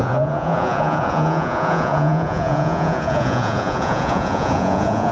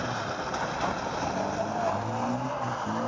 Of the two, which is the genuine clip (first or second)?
second